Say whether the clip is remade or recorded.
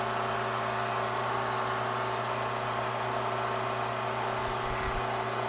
recorded